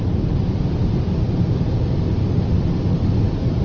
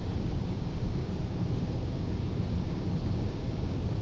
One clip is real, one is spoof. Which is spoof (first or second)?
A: second